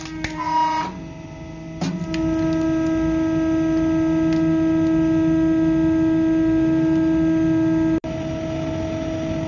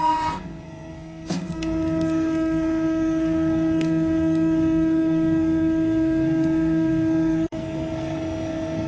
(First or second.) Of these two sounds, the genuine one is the first